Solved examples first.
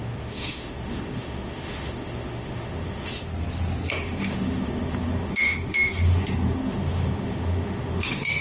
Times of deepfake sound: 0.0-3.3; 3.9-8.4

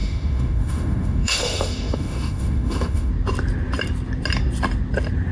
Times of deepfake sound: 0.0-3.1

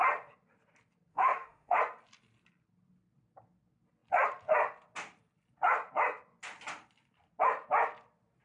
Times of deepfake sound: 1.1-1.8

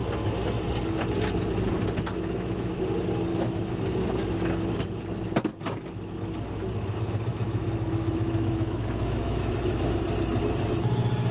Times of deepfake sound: 2.1-2.7; 3.3-3.8; 7.3-10.0